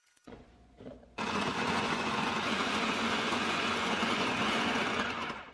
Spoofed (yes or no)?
yes